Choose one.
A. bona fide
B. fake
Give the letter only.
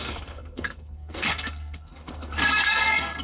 B